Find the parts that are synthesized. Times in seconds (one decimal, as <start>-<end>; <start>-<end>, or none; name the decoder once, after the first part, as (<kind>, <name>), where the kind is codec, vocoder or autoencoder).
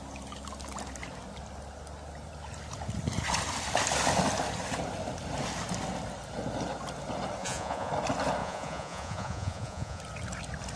7.4-7.9 (vocoder, Vocos); 8.4-10.0